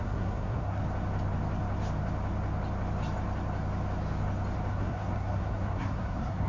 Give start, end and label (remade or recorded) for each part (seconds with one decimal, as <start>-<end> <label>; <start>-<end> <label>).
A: 0.0-0.8 remade; 0.8-4.7 recorded; 4.7-6.5 remade